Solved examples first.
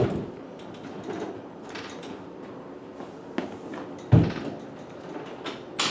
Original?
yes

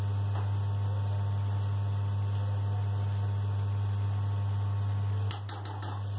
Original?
yes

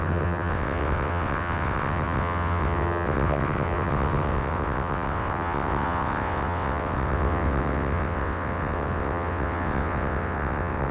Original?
no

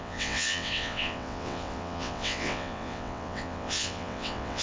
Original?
no